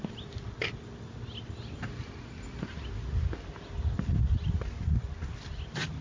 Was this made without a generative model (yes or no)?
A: yes